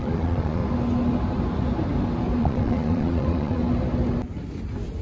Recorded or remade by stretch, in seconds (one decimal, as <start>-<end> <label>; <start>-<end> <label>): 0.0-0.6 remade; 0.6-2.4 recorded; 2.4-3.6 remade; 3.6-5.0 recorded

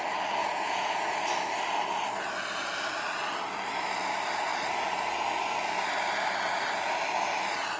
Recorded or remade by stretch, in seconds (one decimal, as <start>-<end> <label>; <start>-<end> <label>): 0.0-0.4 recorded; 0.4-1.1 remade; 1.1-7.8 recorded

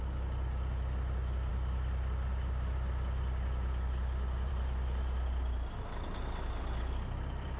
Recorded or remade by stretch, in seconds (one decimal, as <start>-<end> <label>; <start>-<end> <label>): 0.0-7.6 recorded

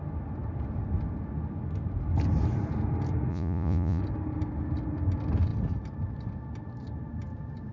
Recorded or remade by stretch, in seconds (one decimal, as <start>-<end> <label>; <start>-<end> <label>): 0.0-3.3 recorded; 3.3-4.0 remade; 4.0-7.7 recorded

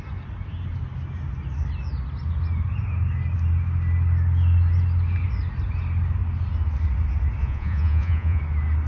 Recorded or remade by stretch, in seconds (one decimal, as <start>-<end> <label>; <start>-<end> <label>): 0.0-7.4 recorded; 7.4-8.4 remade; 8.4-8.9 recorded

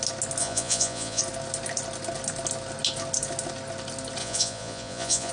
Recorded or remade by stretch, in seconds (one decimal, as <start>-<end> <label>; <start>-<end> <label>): 0.0-0.4 recorded; 0.4-1.2 remade; 1.2-4.2 recorded; 4.2-5.3 remade

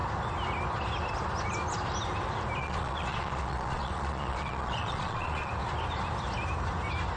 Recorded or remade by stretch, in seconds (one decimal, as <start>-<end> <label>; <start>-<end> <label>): 0.0-2.6 recorded; 2.6-5.5 remade; 5.5-7.2 recorded